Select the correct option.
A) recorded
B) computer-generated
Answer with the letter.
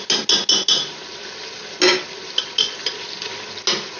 A